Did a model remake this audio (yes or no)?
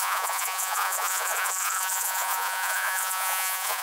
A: yes